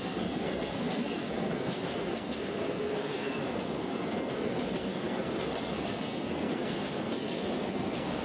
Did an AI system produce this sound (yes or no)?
yes